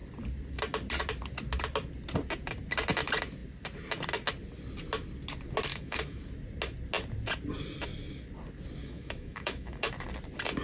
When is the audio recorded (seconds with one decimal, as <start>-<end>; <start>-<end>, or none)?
0.0-5.7; 6.2-8.8; 9.9-10.6